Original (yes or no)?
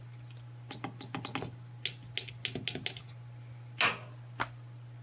yes